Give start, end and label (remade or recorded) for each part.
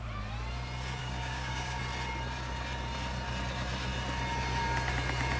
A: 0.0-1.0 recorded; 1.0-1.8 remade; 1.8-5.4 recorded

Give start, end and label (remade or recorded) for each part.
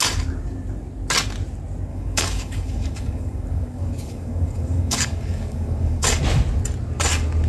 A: 0.0-1.9 recorded; 1.9-6.2 remade; 6.2-7.5 recorded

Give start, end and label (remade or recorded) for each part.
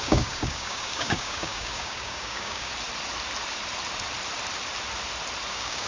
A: 0.0-2.7 remade; 2.7-5.5 recorded; 5.5-5.9 remade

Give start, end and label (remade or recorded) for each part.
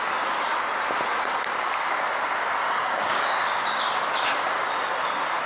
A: 0.0-2.6 recorded; 2.6-3.4 remade; 3.4-5.5 recorded